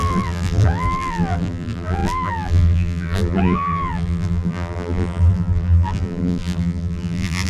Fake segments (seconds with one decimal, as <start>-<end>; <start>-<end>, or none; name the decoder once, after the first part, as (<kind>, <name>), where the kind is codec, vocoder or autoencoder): 0.0-7.5 (vocoder, BigVGAN v2)